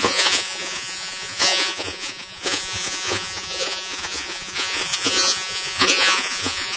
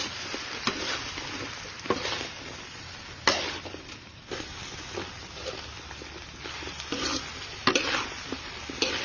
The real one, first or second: second